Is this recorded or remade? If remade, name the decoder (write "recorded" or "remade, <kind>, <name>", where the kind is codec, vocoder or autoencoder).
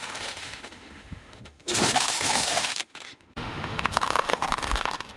remade, autoencoder, DAC-VAE